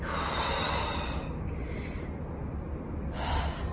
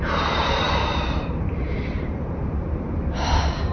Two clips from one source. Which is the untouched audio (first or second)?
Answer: first